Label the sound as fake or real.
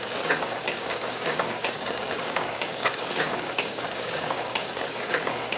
fake